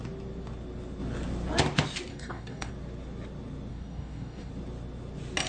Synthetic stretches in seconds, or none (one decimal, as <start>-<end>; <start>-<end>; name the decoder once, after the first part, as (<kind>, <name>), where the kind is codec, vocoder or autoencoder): 2.1-2.7 (codec, DAC); 3.7-4.5